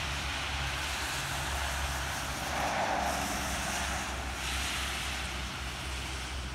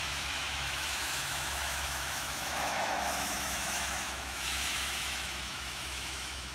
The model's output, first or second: second